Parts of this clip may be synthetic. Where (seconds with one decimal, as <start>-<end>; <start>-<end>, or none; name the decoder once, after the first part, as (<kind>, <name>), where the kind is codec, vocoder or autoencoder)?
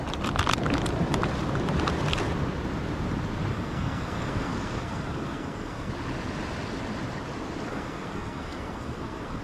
3.5-5.9 (codec, SNAC); 7.7-9.4